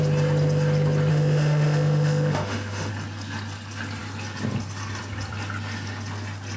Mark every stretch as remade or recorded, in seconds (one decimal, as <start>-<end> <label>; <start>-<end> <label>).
0.0-1.1 recorded; 1.1-2.9 remade; 2.9-6.6 recorded